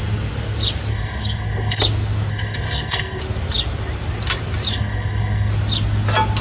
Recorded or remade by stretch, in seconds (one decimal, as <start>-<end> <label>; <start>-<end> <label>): 0.0-0.9 recorded; 0.9-1.8 remade; 1.8-2.3 recorded; 2.3-3.2 remade; 3.2-4.7 recorded; 4.7-5.5 remade; 5.5-6.4 recorded